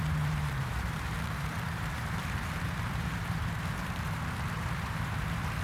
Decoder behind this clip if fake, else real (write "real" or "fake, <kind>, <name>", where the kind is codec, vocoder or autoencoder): fake, vocoder, BigVGAN v2